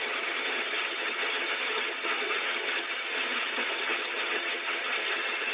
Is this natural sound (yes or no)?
no